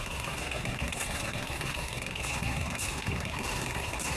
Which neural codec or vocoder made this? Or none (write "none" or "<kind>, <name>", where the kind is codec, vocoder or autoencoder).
codec, SNAC